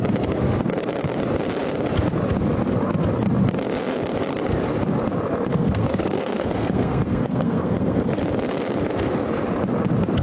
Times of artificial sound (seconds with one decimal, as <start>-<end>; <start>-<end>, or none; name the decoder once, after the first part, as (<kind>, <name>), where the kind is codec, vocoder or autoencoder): 5.5-8.2 (codec, SNAC)